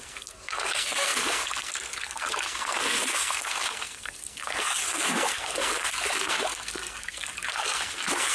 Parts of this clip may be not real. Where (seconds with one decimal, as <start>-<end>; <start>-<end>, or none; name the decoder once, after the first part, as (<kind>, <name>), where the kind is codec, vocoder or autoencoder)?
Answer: 0.0-8.3 (codec, SNAC)